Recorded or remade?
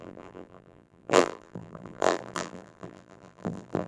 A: remade